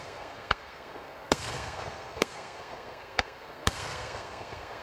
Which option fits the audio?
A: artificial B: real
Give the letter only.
A